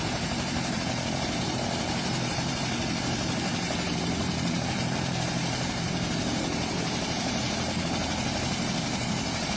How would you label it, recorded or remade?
remade